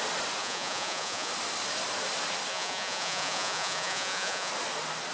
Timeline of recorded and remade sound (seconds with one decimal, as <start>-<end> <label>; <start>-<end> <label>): 0.0-0.4 recorded; 0.4-1.3 remade; 1.3-2.5 recorded; 2.5-4.5 remade; 4.5-5.1 recorded